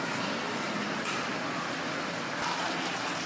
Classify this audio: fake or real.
real